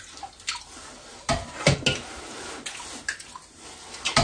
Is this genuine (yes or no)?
yes